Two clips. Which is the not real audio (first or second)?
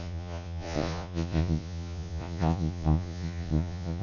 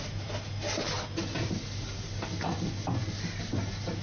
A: first